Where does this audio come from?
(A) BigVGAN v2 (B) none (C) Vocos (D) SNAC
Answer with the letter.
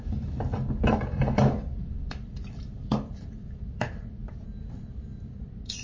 B